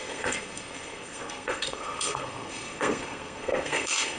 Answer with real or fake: fake